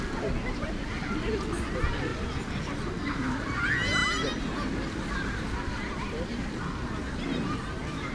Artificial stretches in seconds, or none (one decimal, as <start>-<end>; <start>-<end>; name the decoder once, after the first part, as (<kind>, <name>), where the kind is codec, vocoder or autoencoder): 2.1-2.9 (vocoder, BigVGAN v2)